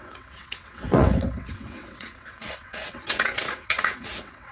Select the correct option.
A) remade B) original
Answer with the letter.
A